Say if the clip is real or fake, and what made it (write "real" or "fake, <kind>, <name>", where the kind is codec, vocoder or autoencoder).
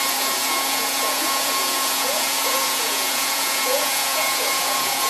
fake, vocoder, Vocos